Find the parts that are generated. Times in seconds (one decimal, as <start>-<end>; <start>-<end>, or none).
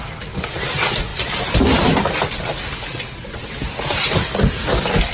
none